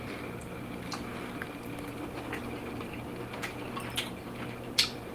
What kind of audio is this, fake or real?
real